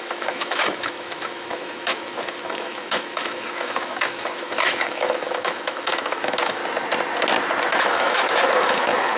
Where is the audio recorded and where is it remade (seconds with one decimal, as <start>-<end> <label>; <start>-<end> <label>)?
0.0-6.6 remade; 6.6-7.8 recorded; 7.8-9.2 remade